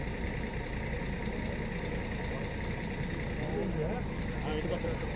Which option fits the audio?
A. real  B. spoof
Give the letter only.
A